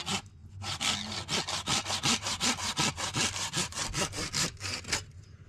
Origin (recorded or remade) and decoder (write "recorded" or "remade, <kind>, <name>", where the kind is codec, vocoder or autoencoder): recorded